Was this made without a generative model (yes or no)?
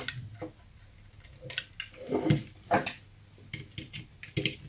yes